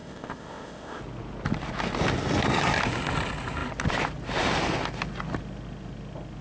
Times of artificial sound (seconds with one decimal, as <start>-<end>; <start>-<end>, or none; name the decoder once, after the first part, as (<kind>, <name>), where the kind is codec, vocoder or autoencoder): 0.0-1.0 (codec, ZipCodec)